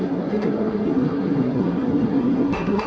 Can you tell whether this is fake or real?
fake